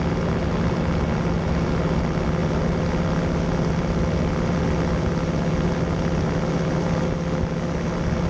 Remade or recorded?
recorded